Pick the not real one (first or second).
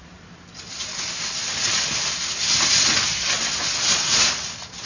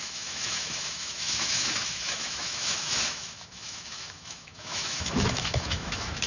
second